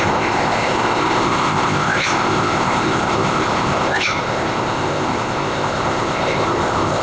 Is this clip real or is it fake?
fake